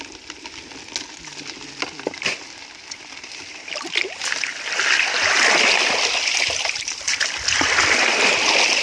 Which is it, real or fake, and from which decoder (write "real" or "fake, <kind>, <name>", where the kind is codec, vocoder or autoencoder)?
real